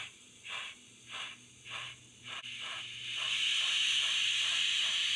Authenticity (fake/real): fake